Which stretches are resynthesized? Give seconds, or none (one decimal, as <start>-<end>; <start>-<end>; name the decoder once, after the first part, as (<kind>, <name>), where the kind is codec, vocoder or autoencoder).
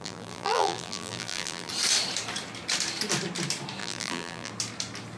0.0-1.7 (vocoder, BigVGAN v2); 3.8-4.5